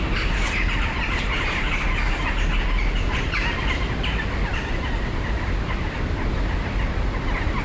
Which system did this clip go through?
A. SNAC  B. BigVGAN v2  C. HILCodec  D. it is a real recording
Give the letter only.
D